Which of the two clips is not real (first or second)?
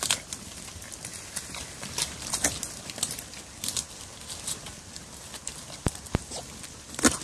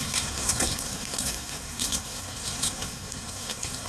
second